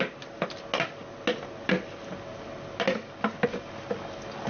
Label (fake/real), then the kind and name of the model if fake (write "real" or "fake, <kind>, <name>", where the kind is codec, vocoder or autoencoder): real